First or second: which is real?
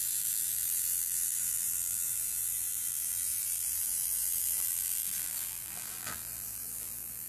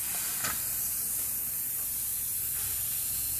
second